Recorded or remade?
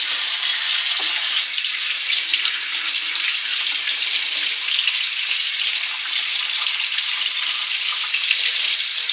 remade